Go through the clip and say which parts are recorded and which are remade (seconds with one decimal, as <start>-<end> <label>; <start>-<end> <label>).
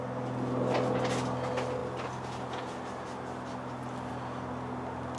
0.0-5.2 recorded